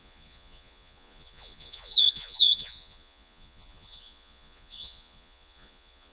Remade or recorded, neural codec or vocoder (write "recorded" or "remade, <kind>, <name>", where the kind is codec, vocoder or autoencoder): remade, vocoder, Vocos